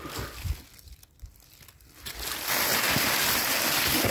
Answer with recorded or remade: recorded